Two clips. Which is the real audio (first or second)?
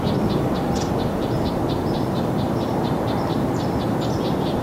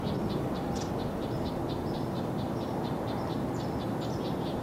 second